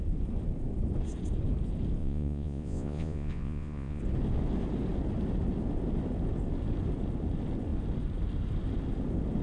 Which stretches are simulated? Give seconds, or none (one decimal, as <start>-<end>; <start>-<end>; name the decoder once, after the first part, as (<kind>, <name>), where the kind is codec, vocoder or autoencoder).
2.0-4.0 (vocoder, Vocos)